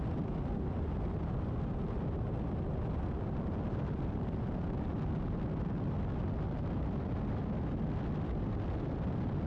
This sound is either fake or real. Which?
real